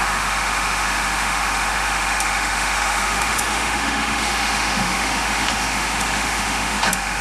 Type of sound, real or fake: fake